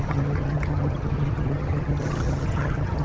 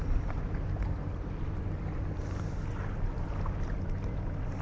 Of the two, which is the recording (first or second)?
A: second